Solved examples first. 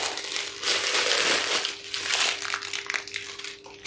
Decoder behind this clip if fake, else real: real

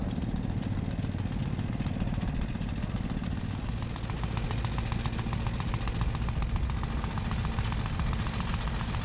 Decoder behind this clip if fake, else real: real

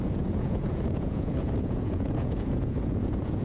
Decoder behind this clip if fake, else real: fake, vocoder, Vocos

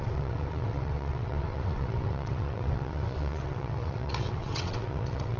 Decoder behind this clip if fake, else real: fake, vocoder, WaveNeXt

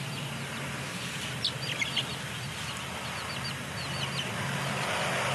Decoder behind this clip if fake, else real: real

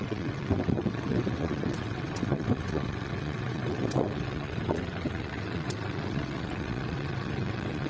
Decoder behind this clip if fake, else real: fake, vocoder, WaveNeXt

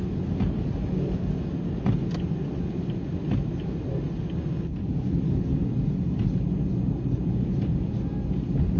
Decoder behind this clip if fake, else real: real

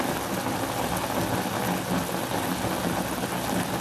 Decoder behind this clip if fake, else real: real